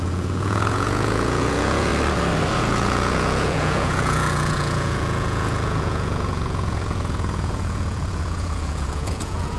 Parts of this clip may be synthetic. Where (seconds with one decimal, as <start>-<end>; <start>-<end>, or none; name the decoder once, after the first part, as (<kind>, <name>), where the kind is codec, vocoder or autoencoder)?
0.0-1.9 (vocoder, Vocos); 2.6-9.6